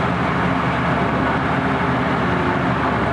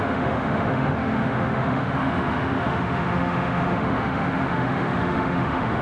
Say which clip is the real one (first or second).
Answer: first